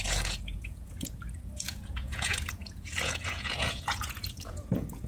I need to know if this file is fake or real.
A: fake